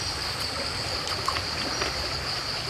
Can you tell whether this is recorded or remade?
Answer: remade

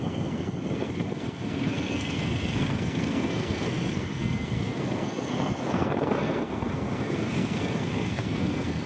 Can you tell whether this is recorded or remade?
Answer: remade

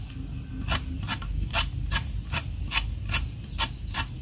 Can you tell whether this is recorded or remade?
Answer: recorded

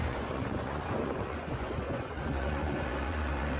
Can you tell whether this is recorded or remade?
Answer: remade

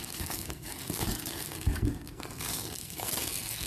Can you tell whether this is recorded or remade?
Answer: remade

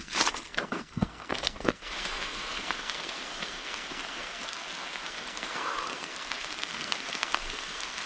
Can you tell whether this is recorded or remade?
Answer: remade